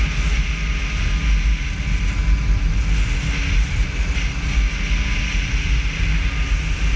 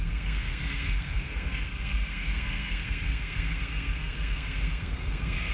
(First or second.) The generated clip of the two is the second